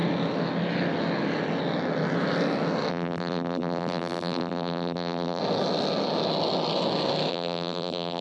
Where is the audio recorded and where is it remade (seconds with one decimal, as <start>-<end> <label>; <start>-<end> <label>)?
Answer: 0.0-2.9 recorded; 2.9-5.4 remade; 5.4-7.3 recorded; 7.3-8.2 remade